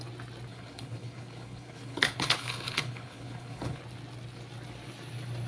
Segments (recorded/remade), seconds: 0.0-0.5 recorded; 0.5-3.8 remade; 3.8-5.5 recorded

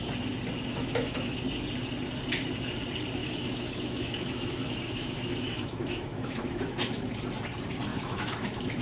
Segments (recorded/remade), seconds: 0.0-0.7 recorded; 0.7-1.4 remade; 1.4-3.2 recorded; 3.2-7.2 remade; 7.2-7.9 recorded; 7.9-8.8 remade

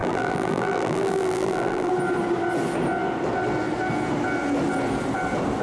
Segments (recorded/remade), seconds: 0.0-1.9 remade; 1.9-5.6 recorded

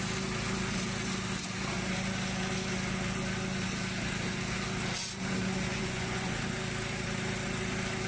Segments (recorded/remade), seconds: 0.0-5.7 recorded; 5.7-6.3 remade; 6.3-8.1 recorded